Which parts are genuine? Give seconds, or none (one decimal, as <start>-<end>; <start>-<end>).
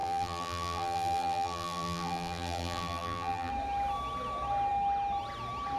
3.5-5.8